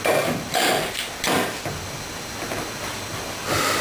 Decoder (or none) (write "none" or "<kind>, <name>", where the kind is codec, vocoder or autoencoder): none